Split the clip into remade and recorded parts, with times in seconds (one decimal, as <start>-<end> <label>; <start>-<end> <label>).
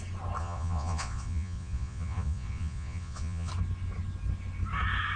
0.0-0.4 recorded; 0.4-3.5 remade; 3.5-5.2 recorded